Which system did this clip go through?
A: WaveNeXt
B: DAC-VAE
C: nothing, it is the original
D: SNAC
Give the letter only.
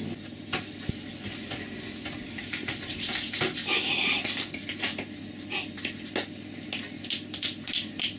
C